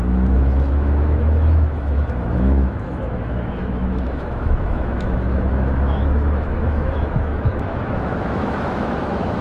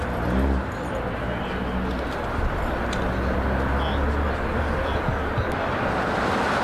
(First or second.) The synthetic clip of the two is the first